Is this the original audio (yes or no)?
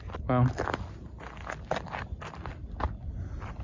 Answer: yes